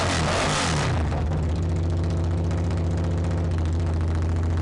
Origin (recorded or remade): recorded